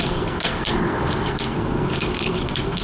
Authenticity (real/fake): fake